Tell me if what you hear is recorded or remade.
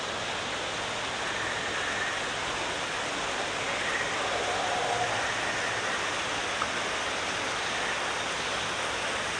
recorded